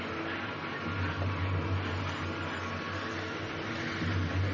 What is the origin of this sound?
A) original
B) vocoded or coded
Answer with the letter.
A